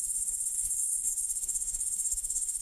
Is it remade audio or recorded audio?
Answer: remade